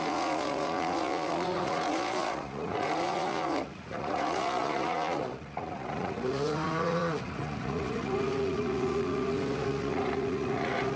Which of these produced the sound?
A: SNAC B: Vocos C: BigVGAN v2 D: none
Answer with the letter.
B